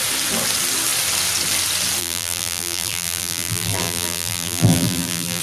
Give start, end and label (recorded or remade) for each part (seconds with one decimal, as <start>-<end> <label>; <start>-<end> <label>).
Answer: 0.0-2.0 recorded; 2.0-5.4 remade